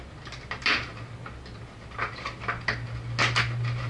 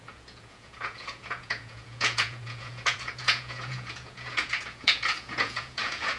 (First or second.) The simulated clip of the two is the second